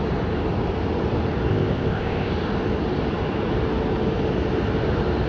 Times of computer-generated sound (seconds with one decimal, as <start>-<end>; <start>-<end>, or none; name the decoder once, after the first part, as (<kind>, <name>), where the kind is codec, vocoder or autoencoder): 1.5-2.3 (codec, ZipCodec)